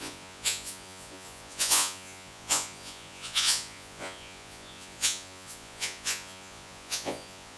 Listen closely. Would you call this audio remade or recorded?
remade